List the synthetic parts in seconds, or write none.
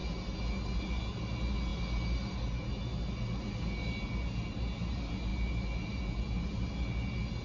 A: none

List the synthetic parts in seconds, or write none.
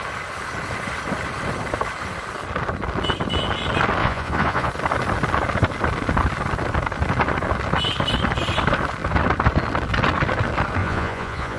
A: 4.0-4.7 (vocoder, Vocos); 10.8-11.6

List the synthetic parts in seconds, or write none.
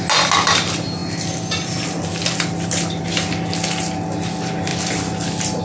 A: none